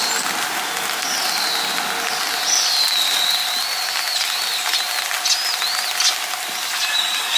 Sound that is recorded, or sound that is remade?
recorded